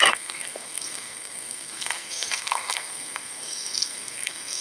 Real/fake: fake